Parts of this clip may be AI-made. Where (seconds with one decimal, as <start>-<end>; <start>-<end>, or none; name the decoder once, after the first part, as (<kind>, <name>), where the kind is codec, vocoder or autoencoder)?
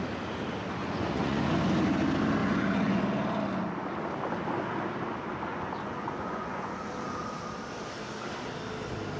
0.8-1.5 (vocoder, Vocos); 2.4-3.0; 5.5-6.7